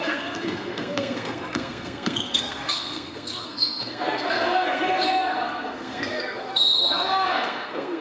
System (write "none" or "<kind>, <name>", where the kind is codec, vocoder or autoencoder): codec, SNAC